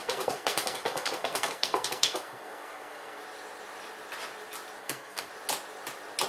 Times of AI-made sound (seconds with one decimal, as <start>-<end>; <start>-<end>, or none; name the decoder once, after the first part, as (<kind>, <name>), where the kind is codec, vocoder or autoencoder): 0.0-3.2 (codec, SNAC); 4.8-5.3